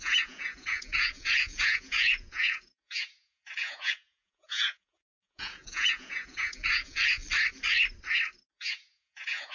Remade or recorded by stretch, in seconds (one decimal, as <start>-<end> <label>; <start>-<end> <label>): 0.0-7.2 remade; 7.2-8.6 recorded; 8.6-9.5 remade